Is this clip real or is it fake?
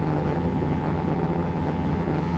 fake